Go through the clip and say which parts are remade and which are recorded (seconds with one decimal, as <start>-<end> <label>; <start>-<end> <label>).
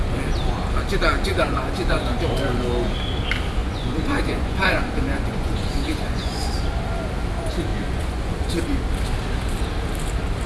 0.0-1.3 recorded; 1.3-2.2 remade; 2.2-3.6 recorded; 3.6-6.5 remade; 6.5-7.7 recorded; 7.7-8.9 remade; 8.9-10.5 recorded